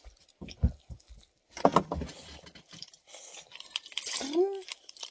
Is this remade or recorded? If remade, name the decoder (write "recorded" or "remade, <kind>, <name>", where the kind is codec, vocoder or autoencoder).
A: recorded